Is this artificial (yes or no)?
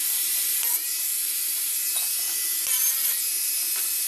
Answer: no